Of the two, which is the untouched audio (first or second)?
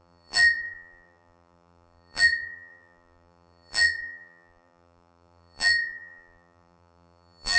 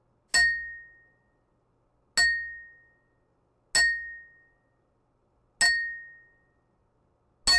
second